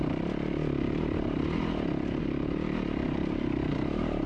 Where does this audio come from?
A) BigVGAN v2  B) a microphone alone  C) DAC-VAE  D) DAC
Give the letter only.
B